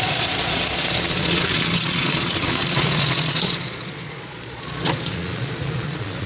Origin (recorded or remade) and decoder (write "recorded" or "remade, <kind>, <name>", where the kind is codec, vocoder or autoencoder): remade, vocoder, Vocos